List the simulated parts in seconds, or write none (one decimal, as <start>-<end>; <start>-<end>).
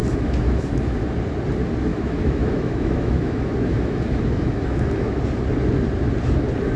0.0-1.1; 1.9-5.2